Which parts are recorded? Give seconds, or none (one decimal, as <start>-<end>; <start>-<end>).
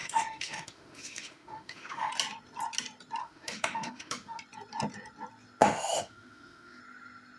2.1-3.2; 4.4-5.6; 6.8-7.4